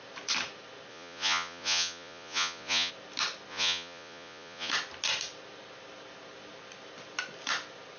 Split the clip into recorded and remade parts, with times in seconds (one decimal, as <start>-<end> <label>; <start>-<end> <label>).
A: 0.0-0.9 recorded; 0.9-2.9 remade; 2.9-3.5 recorded; 3.5-4.7 remade; 4.7-8.0 recorded